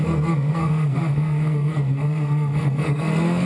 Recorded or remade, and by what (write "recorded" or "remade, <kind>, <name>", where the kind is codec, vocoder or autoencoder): remade, codec, SNAC